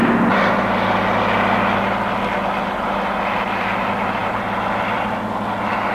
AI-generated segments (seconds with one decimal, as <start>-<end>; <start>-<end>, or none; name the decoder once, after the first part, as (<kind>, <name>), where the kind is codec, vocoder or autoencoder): none

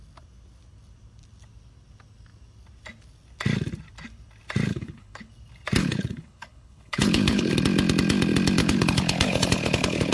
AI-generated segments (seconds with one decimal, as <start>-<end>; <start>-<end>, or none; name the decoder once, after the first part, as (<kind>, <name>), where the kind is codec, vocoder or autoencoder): 4.7-5.3 (codec, HILCodec); 5.8-7.5; 8.6-10.1